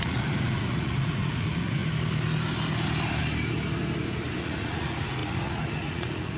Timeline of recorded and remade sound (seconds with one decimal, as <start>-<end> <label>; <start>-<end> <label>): 0.0-1.8 remade; 1.8-4.4 recorded; 4.4-6.4 remade